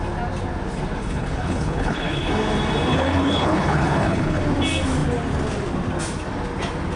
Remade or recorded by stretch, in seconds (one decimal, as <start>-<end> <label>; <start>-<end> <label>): 0.0-1.0 recorded; 1.0-2.3 remade; 2.3-2.9 recorded; 2.9-4.4 remade; 4.4-7.0 recorded